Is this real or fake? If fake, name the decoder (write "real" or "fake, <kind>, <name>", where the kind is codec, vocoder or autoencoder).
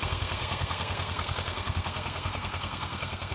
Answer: fake, codec, SNAC